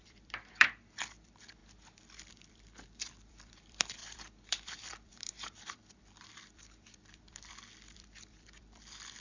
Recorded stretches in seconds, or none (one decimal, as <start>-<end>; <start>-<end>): 1.6-2.3